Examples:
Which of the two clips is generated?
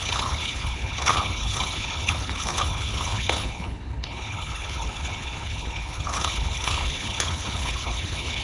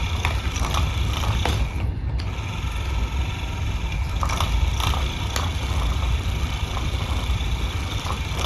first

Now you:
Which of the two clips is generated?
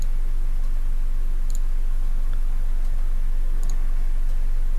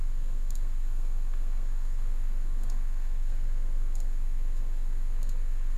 second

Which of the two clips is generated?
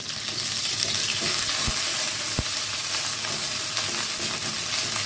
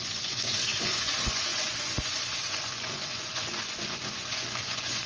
second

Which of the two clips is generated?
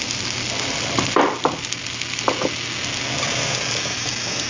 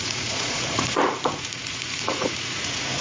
second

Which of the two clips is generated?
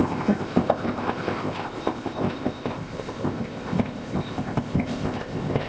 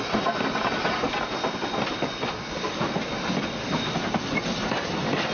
first